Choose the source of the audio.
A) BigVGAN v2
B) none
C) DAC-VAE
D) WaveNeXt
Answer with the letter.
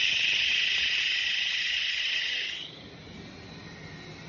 B